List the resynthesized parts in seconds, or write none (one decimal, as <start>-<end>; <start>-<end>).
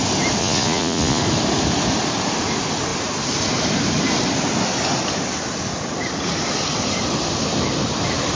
0.4-1.2